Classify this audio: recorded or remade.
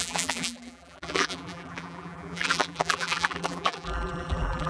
remade